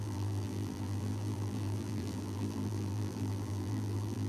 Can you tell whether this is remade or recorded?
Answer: remade